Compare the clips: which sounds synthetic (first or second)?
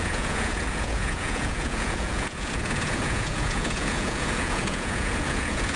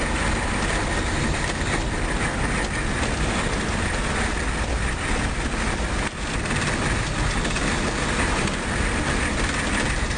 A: first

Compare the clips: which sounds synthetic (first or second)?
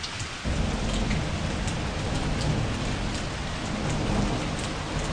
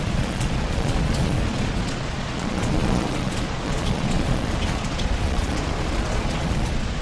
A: second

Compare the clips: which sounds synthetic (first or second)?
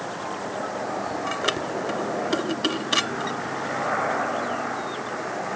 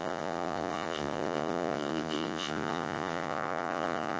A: second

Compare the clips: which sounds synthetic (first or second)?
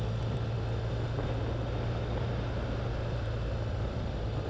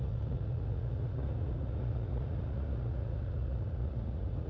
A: second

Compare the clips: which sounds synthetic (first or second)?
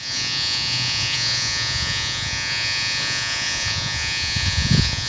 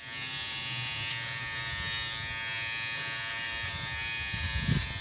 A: first